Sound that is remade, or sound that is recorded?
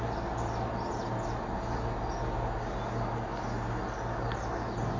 recorded